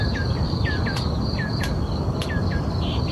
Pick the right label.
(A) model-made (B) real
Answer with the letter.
B